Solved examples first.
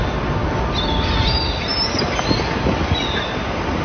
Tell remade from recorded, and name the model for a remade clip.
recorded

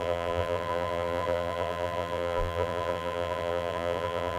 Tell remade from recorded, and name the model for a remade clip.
remade, vocoder, BigVGAN v2